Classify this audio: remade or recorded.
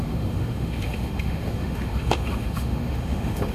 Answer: remade